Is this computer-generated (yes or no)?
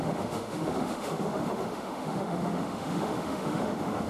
yes